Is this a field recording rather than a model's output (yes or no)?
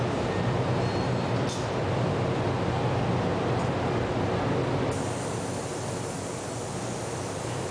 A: yes